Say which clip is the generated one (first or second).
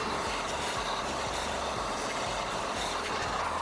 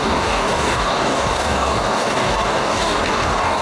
second